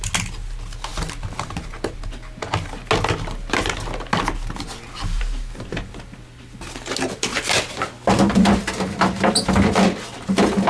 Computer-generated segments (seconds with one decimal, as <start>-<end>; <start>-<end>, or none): none